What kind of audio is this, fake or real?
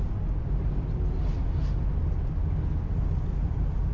real